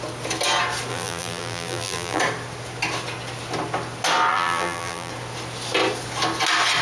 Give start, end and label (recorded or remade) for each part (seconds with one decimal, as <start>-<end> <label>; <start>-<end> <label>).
0.0-0.9 recorded; 0.9-2.2 remade; 2.2-4.3 recorded; 4.3-5.1 remade; 5.1-6.8 recorded